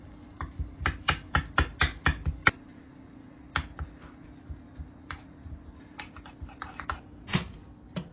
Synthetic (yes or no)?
no